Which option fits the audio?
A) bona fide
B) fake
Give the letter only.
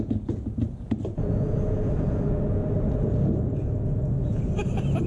B